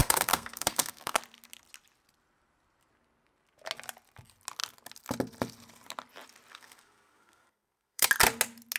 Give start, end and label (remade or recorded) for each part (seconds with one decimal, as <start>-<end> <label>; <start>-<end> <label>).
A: 0.0-1.2 remade; 1.2-6.5 recorded; 6.5-8.1 remade; 8.1-8.8 recorded